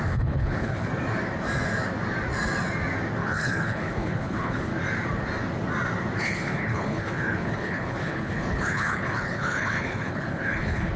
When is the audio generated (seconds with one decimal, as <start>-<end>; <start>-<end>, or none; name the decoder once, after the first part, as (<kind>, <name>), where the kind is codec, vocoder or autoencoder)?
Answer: 0.0-0.9 (codec, HILCodec); 3.2-4.7; 6.2-11.0